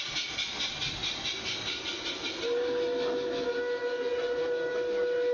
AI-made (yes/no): no